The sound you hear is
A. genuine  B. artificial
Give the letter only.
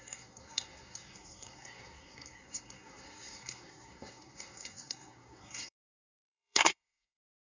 B